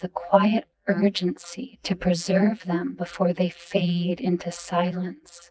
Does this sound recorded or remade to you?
remade